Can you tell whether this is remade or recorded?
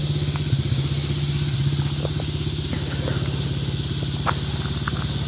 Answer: recorded